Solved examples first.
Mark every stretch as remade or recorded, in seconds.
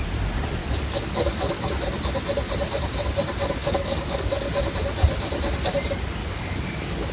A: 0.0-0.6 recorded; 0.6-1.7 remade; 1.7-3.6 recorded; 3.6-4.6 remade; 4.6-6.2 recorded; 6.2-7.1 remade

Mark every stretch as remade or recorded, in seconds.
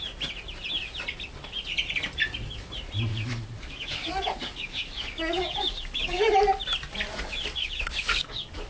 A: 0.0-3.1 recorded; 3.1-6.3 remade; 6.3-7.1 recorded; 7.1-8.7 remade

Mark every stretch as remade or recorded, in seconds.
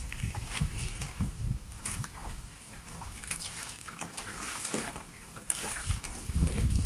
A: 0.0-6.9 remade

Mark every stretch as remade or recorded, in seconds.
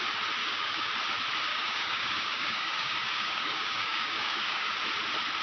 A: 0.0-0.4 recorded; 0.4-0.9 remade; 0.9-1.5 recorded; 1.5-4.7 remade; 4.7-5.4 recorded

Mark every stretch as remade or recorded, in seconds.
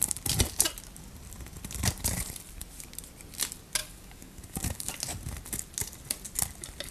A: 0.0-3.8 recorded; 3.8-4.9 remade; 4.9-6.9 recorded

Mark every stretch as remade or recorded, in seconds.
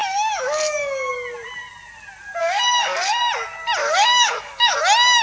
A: 0.0-1.1 remade; 1.1-2.4 recorded; 2.4-3.2 remade; 3.2-3.8 recorded; 3.8-4.8 remade; 4.8-5.2 recorded